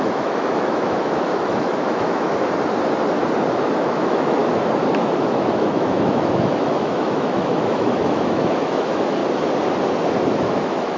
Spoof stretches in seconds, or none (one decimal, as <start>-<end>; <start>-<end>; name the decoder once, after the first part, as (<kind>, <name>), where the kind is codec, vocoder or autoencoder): 0.0-2.3 (autoencoder, DAC-VAE); 3.7-4.4; 4.9-9.2; 10.3-11.0